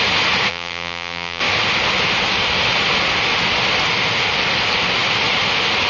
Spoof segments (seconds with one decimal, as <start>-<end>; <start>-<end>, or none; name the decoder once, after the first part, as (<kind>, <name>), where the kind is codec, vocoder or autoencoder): 0.5-1.4 (vocoder, BigVGAN v2)